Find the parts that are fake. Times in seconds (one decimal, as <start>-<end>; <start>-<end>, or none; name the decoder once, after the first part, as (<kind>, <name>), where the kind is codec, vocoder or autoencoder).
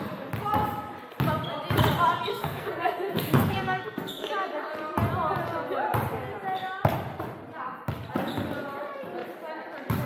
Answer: 2.3-4.3 (codec, SNAC)